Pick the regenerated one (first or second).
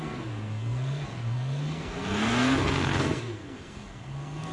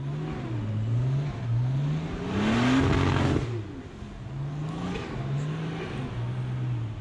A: first